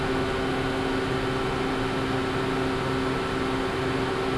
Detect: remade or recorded recorded